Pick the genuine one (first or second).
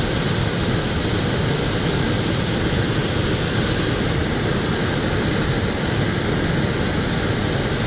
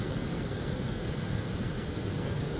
first